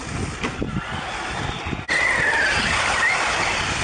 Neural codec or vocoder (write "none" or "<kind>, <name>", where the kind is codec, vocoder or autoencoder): none